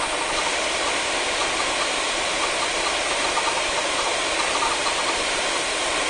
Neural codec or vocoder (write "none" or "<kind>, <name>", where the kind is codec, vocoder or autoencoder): vocoder, BigVGAN v2